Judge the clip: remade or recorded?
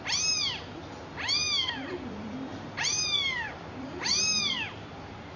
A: remade